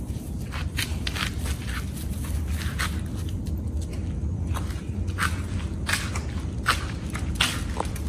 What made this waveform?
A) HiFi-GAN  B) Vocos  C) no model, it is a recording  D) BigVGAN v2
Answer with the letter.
C